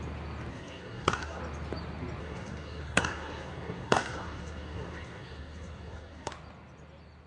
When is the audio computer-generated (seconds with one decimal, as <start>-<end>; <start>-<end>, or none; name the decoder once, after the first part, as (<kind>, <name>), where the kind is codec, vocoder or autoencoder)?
0.5-1.4 (codec, SNAC); 2.2-6.3